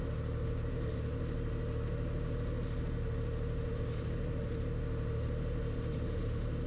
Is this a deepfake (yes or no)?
no